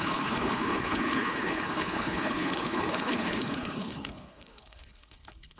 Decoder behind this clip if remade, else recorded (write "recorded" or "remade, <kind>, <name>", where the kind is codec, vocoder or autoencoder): remade, codec, HILCodec